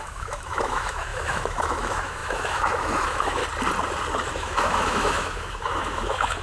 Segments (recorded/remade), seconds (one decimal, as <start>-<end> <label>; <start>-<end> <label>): 0.0-3.4 remade; 3.4-4.3 recorded; 4.3-6.4 remade